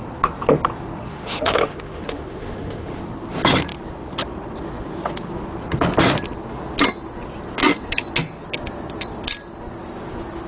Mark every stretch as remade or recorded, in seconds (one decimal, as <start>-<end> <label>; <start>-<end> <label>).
0.0-1.1 recorded; 1.1-3.0 remade; 3.0-10.5 recorded